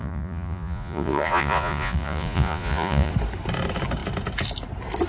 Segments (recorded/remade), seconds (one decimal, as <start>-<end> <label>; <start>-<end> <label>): 0.0-3.1 remade; 3.1-5.1 recorded